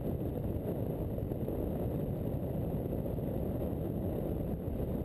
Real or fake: real